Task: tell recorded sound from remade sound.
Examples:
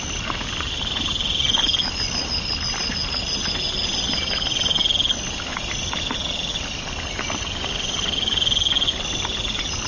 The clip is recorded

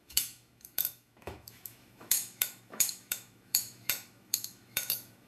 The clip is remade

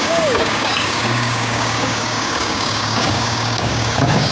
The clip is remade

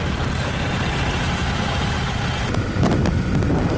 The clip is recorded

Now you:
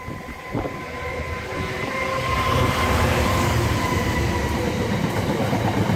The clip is recorded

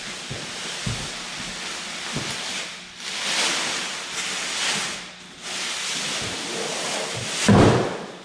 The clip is recorded